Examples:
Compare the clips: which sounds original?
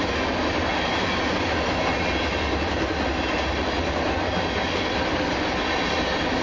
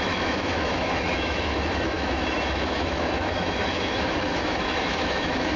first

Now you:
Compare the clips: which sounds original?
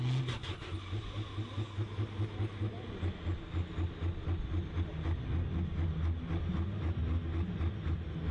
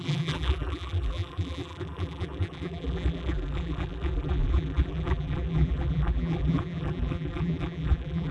first